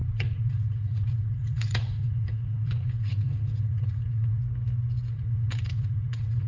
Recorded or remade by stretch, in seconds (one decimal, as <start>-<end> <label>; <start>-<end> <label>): 0.0-4.4 remade; 4.4-5.1 recorded; 5.1-6.5 remade